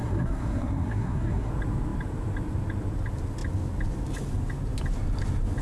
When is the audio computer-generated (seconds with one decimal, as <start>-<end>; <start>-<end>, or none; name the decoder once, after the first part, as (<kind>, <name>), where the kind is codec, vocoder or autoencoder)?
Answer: 0.0-1.5 (codec, SNAC)